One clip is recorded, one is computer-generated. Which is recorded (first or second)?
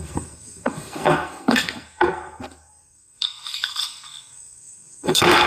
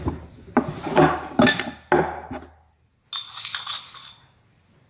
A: second